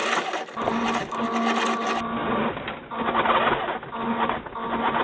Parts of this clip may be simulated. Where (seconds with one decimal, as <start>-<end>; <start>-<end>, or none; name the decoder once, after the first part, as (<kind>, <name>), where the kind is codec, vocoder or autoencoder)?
0.0-1.1 (vocoder, BigVGAN v2)